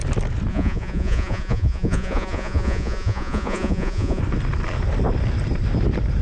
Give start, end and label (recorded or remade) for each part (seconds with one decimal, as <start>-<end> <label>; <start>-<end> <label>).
0.0-0.5 recorded; 0.5-4.2 remade; 4.2-6.2 recorded